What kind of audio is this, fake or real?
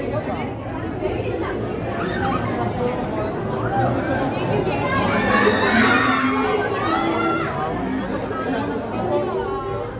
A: real